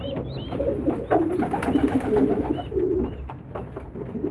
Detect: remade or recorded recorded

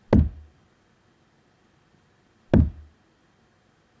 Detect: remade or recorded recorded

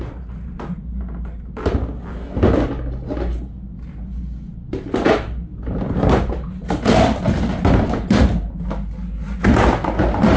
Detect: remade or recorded recorded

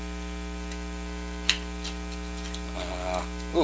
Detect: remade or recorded recorded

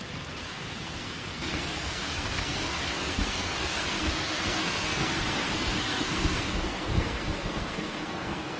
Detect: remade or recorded remade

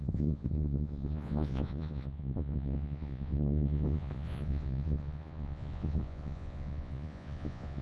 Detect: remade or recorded remade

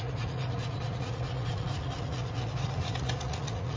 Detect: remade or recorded remade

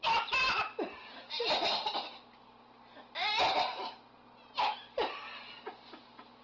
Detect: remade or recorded recorded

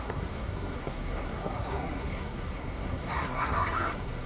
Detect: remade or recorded remade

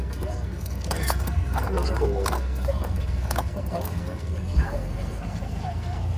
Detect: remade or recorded remade